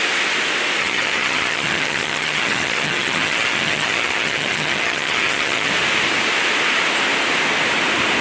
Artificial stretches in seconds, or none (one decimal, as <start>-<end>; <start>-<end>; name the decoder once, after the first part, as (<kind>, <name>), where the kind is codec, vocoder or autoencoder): 0.8-5.7 (vocoder, HiFi-GAN)